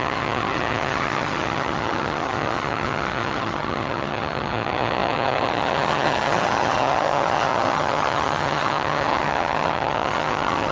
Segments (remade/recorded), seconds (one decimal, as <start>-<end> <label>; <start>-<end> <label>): 0.0-10.7 remade